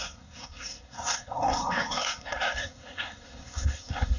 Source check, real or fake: fake